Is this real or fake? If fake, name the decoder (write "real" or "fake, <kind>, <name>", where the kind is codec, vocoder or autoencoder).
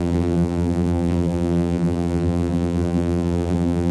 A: fake, vocoder, BigVGAN v2